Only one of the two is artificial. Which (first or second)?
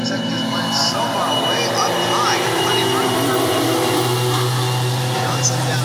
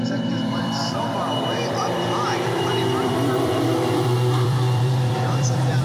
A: second